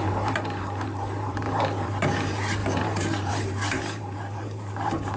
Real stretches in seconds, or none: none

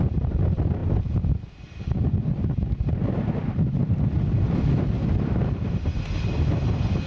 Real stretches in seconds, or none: 0.0-7.1